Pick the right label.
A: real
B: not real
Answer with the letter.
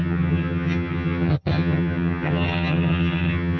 B